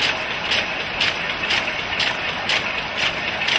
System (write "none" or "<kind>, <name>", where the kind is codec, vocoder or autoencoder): none